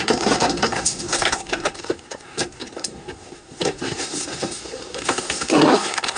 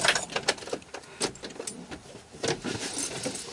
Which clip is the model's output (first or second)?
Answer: first